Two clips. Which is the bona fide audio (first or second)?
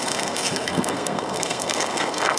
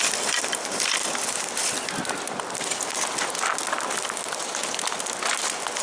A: second